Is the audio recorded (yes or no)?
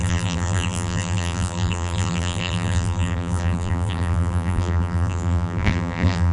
no